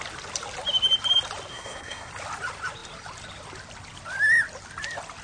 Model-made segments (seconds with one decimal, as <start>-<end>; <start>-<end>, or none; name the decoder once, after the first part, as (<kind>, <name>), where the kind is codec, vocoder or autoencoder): 1.5-2.1 (codec, SNAC)